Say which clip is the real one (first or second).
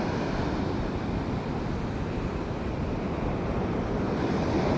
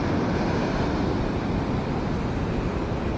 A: second